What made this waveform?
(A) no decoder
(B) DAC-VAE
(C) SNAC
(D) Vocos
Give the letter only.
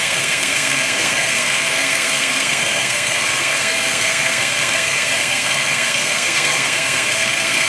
C